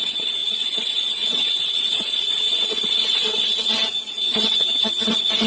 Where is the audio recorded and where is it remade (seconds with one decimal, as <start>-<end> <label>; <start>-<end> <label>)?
0.0-5.5 remade